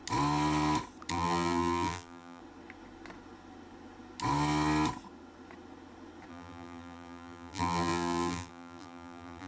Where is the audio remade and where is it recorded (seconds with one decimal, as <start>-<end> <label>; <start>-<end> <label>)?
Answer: 0.0-1.1 recorded; 1.1-2.4 remade; 2.4-6.3 recorded; 6.3-9.5 remade